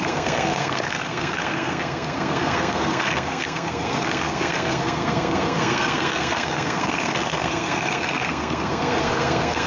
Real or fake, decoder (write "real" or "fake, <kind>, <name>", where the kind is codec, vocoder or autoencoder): fake, codec, SNAC